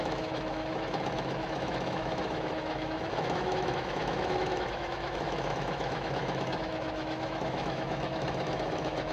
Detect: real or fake fake